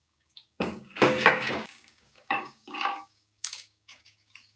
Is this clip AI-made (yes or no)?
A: yes